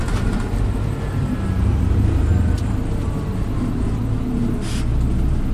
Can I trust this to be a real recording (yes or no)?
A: yes